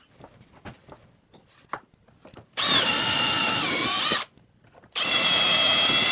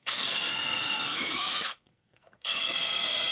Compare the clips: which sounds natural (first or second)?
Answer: first